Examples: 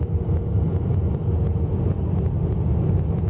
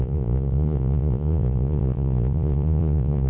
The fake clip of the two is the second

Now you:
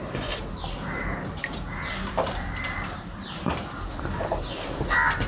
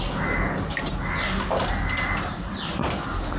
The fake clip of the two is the first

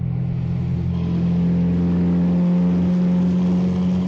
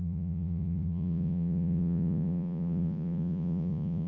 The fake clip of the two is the second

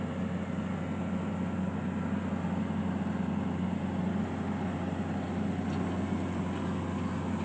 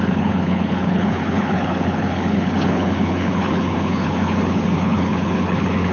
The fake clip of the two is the second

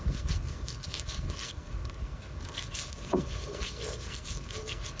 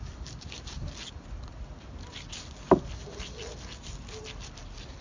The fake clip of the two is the first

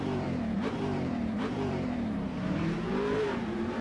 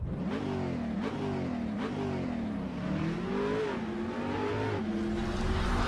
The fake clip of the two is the first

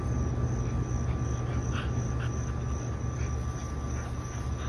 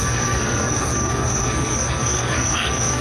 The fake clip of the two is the second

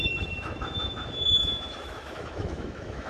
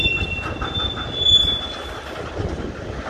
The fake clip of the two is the first